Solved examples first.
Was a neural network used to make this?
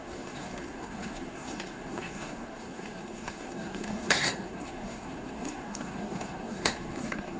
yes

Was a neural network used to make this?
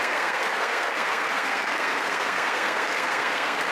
yes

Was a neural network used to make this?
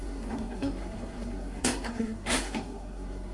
yes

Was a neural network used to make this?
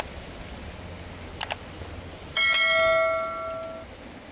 no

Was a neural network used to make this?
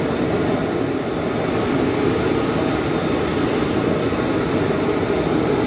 no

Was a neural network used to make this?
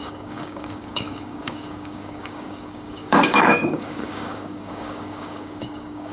yes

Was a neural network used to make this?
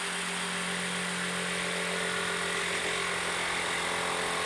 no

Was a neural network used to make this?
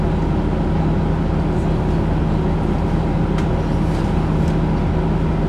no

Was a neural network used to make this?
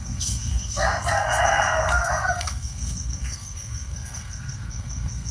yes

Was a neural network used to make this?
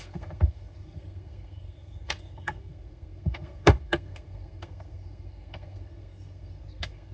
yes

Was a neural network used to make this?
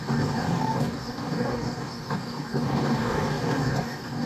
yes